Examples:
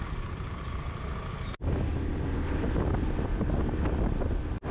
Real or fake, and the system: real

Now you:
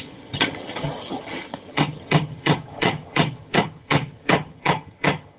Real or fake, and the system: fake, vocoder, HiFi-GAN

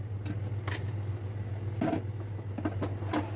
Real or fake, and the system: real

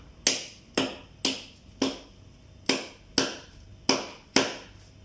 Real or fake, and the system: real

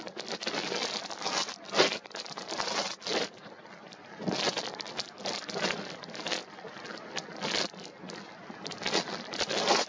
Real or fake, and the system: real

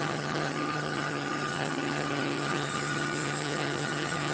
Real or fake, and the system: fake, vocoder, HiFi-GAN